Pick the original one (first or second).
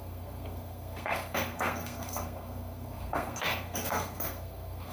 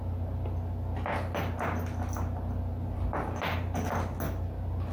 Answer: second